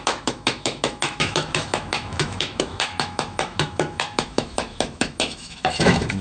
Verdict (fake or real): fake